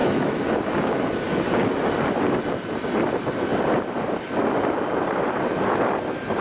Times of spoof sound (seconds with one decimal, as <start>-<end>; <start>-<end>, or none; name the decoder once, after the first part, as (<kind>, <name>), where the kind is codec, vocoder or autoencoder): 0.0-1.2 (autoencoder, DAC-VAE)